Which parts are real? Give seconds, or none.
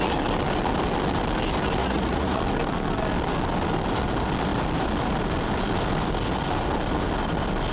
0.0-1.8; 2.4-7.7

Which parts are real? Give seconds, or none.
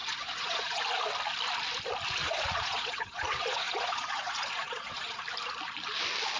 0.8-2.2; 5.2-6.4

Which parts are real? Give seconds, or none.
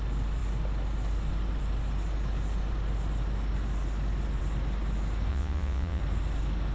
0.0-5.3; 6.0-6.7